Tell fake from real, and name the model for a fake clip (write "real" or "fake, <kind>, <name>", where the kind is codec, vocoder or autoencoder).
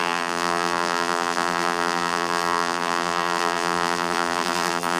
fake, vocoder, BigVGAN v2